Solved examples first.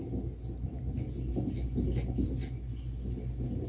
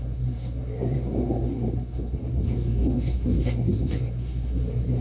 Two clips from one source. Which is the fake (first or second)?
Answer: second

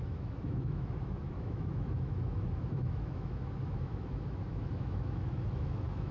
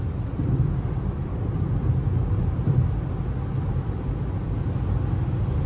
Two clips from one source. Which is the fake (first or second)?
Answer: first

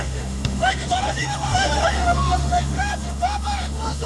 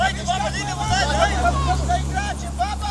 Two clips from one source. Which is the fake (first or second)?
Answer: first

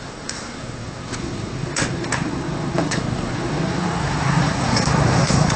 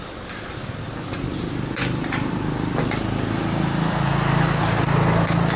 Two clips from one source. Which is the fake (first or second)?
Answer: first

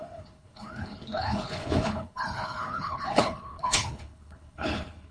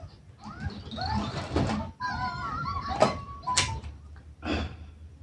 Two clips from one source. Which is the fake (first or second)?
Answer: first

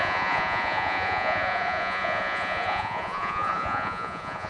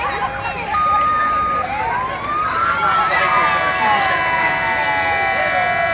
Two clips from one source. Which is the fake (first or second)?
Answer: first